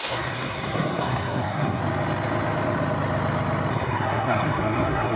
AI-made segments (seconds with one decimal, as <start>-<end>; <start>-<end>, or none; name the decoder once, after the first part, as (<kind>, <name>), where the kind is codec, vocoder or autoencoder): 0.0-1.8 (codec, SNAC); 3.7-5.2